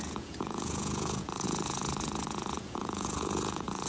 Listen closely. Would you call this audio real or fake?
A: fake